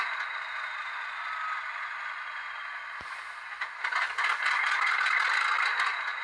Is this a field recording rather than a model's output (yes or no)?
yes